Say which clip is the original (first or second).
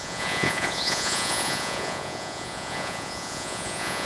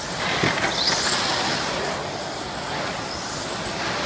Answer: second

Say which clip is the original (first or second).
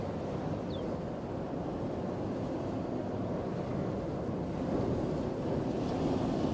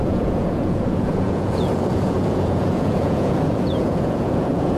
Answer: first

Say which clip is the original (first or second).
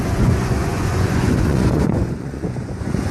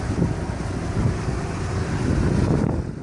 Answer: second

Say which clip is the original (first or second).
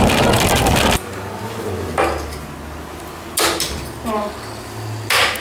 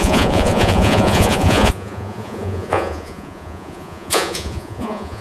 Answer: first